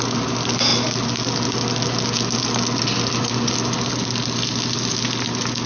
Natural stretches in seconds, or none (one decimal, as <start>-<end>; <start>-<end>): 0.0-5.7

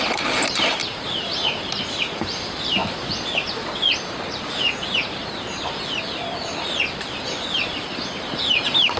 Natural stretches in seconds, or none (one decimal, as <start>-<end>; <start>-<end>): 2.8-7.0

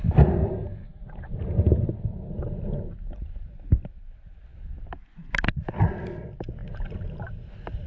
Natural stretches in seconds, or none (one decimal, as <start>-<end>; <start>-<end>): 0.0-7.9

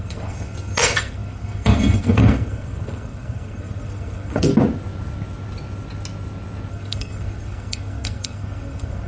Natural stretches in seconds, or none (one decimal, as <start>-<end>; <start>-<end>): 4.5-6.7

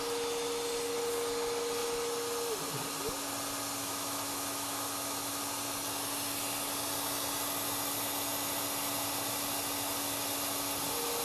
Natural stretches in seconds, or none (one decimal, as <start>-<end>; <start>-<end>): 0.0-3.8; 5.4-11.2